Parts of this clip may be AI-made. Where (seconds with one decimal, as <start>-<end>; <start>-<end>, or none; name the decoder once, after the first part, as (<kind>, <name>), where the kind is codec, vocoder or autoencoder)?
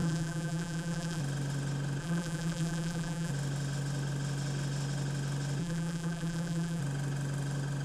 0.0-1.2 (vocoder, BigVGAN v2); 2.0-3.3; 5.6-6.8